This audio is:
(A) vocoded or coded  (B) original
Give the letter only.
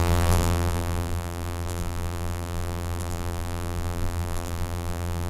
A